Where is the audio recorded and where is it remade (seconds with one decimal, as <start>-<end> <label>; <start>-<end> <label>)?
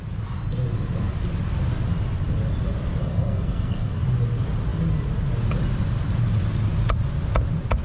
0.0-3.0 recorded; 3.0-4.0 remade; 4.0-7.8 recorded